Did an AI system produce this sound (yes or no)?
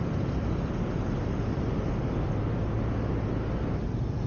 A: no